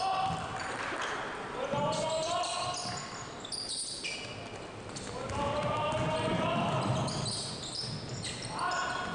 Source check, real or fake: real